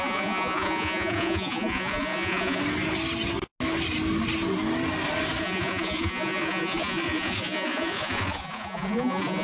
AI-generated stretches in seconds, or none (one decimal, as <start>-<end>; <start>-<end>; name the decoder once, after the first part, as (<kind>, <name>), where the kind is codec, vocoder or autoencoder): 0.0-2.6 (vocoder, Vocos); 5.4-9.4